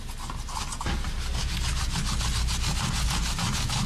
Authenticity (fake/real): real